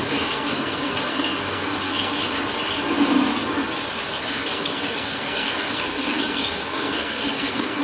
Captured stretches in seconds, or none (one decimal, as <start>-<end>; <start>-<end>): 2.2-4.2